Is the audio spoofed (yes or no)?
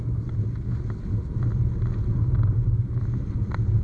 no